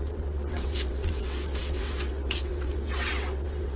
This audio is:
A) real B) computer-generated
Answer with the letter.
B